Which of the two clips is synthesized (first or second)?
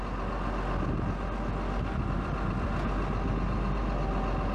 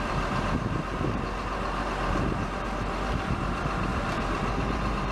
second